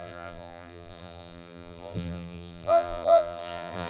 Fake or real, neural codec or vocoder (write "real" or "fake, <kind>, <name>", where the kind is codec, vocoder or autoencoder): fake, vocoder, BigVGAN v2